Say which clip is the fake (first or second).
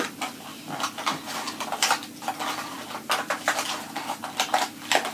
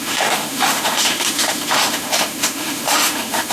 second